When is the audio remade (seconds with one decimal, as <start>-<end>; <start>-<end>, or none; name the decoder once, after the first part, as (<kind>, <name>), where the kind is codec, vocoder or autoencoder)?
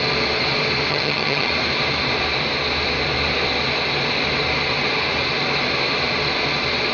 0.9-1.5 (vocoder, HiFi-GAN)